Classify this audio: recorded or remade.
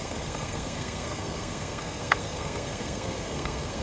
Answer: remade